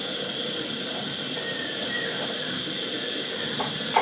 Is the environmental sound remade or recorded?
recorded